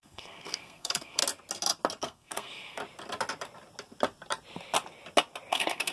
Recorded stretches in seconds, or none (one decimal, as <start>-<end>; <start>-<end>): 1.2-2.0; 2.8-5.5